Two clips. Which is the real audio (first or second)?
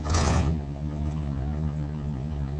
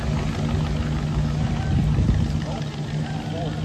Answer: second